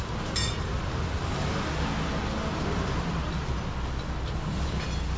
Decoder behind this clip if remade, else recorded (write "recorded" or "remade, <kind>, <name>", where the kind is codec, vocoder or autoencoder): recorded